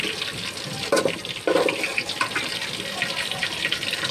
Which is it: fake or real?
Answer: real